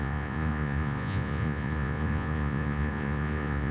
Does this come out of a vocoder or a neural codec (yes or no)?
yes